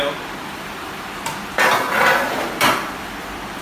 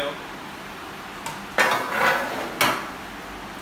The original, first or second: second